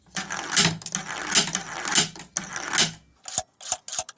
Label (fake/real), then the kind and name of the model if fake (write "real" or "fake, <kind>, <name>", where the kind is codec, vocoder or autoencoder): real